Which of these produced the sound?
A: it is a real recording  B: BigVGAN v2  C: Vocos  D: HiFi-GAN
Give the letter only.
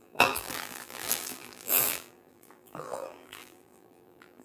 B